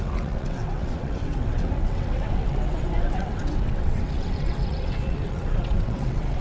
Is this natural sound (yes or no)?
no